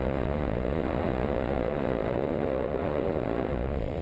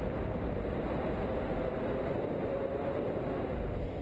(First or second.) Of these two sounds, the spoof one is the first